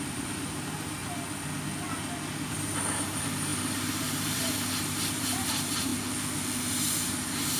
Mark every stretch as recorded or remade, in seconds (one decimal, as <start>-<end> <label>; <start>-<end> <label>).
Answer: 0.0-1.0 remade; 1.0-2.5 recorded; 2.5-5.9 remade; 5.9-6.6 recorded; 6.6-7.6 remade